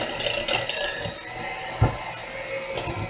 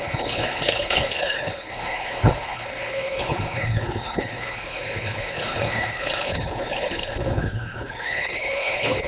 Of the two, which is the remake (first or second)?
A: second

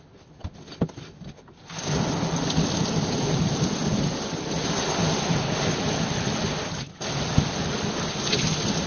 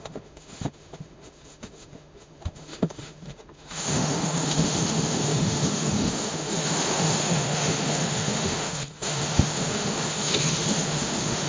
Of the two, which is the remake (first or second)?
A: second